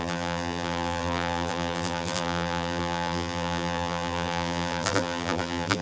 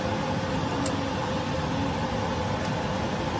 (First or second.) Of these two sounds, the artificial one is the first